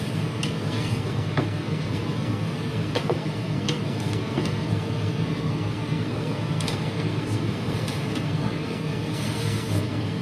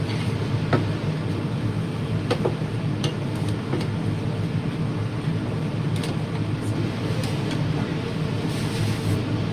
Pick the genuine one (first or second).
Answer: second